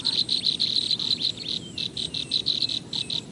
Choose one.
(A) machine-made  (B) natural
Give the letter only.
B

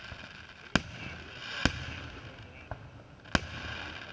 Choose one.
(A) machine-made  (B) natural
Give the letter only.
B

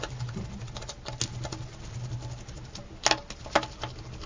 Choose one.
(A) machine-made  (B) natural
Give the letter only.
B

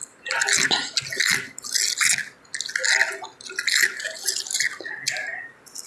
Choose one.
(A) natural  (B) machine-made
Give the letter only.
A